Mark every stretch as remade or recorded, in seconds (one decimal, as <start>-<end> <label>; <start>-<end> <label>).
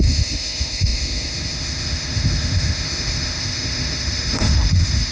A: 0.0-5.1 remade